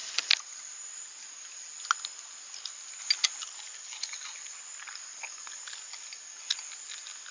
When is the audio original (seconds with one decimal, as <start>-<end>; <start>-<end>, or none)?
0.0-7.3